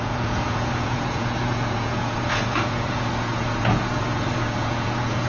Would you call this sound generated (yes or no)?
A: yes